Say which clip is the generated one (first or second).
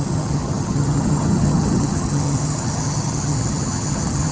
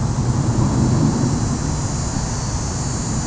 first